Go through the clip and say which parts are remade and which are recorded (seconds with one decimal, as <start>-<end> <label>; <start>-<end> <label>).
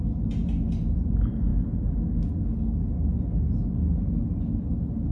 0.0-5.1 recorded